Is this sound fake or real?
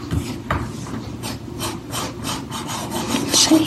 fake